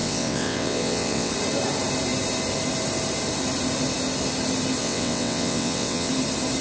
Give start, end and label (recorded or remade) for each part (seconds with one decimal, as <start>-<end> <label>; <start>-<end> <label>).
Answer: 0.0-1.3 remade; 1.3-4.8 recorded; 4.8-6.1 remade; 6.1-6.6 recorded